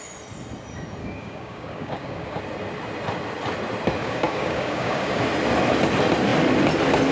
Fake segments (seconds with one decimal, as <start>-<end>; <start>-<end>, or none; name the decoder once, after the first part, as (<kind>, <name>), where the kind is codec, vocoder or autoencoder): 1.0-2.4 (codec, DAC); 4.0-5.2